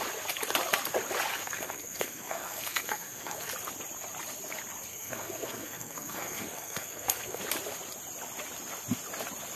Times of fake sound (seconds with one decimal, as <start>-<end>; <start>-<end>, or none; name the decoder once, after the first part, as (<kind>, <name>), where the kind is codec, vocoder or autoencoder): 1.3-3.5 (codec, SNAC); 4.9-7.4